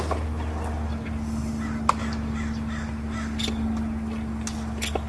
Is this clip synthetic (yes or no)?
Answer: no